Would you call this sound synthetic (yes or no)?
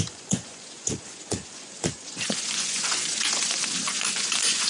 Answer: yes